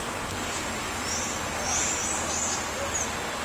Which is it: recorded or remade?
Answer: recorded